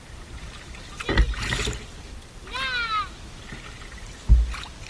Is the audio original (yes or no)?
yes